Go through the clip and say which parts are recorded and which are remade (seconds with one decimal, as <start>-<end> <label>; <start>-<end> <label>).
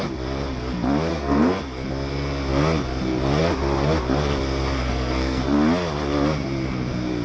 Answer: 0.0-1.1 recorded; 1.1-1.6 remade; 1.6-4.8 recorded; 4.8-5.4 remade; 5.4-7.2 recorded